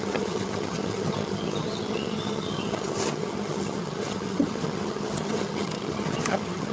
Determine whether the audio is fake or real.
fake